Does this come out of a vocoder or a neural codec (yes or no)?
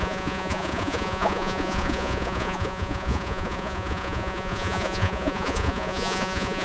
yes